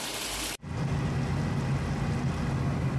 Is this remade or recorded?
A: recorded